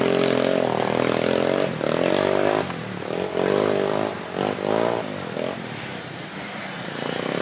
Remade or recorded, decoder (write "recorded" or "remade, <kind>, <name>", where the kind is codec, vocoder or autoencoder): recorded